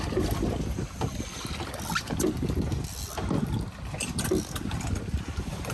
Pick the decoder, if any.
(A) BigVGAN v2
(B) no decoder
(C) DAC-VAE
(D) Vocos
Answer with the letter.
B